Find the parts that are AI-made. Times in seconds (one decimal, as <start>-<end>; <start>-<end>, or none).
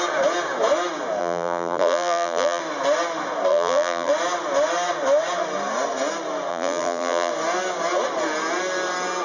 1.2-2.6; 3.5-4.1; 6.5-7.3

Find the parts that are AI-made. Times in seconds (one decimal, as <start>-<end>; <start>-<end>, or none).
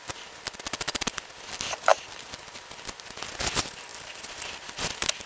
3.9-5.3